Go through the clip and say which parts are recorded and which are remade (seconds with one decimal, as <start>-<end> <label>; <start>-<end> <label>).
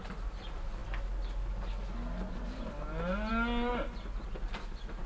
0.0-5.1 recorded